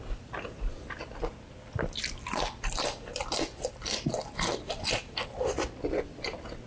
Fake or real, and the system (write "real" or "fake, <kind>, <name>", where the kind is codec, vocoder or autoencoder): real